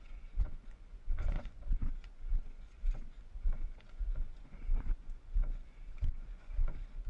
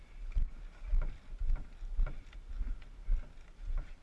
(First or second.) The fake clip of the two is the first